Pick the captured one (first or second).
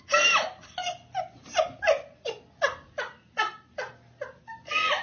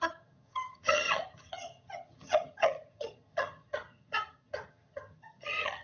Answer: first